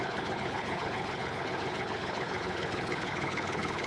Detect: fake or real fake